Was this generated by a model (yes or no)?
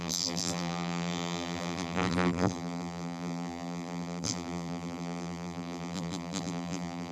yes